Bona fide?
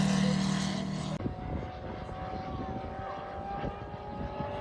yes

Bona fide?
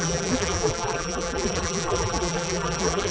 no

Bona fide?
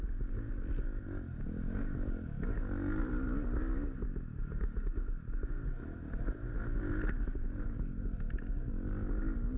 yes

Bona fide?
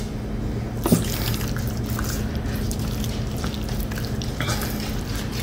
yes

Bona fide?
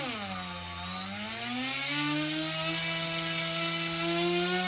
yes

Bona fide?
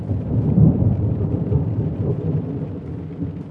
no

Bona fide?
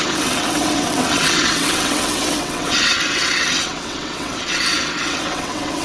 no